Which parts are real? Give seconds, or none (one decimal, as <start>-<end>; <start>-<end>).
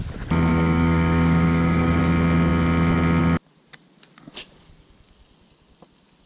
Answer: 0.0-0.5; 2.0-6.3